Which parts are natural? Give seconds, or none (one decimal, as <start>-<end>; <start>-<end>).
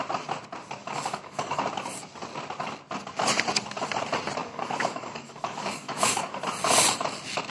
0.0-0.8; 1.6-4.4; 6.4-7.5